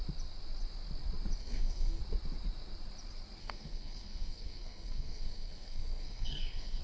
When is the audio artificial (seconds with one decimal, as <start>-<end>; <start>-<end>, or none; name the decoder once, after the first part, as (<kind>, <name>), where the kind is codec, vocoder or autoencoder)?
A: 1.4-2.0 (codec, SNAC); 3.4-6.8